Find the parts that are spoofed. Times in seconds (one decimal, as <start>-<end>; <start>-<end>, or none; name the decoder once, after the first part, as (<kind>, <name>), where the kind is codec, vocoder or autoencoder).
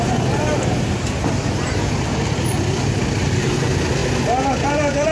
0.0-2.1 (vocoder, BigVGAN v2); 2.9-4.0